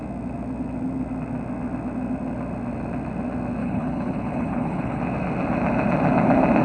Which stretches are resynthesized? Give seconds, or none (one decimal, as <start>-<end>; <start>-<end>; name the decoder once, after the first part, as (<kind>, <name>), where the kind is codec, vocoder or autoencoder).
3.6-5.0 (codec, HILCodec)